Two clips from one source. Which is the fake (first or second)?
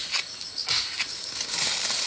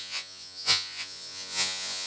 second